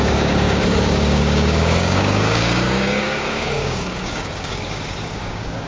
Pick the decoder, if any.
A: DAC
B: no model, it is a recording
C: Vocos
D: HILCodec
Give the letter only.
A